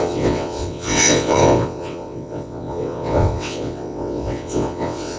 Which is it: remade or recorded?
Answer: remade